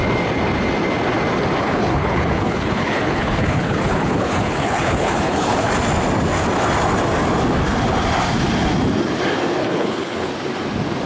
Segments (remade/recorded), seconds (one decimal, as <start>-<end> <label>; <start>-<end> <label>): 0.0-1.6 recorded; 1.6-5.7 remade; 5.7-9.6 recorded; 9.6-10.3 remade; 10.3-11.1 recorded